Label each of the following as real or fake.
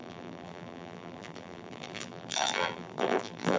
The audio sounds fake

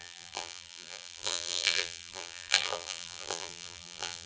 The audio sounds fake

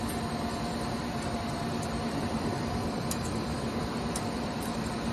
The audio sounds fake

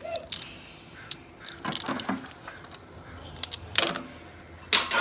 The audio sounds real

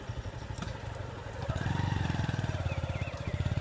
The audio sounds fake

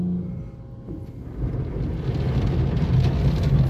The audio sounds real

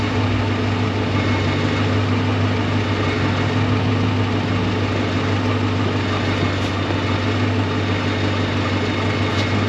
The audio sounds real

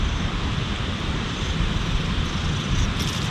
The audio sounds real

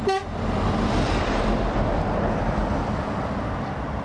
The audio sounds fake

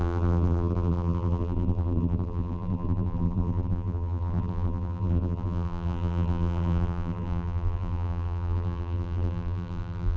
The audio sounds fake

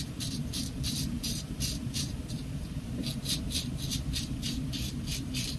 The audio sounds fake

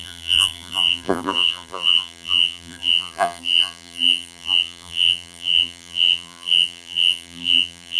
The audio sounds fake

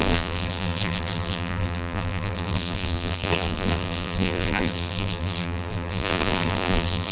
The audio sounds fake